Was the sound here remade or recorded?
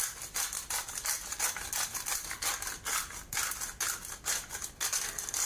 recorded